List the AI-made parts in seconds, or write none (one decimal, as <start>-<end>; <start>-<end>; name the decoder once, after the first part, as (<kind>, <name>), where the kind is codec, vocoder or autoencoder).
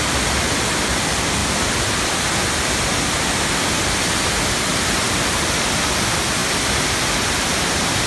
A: none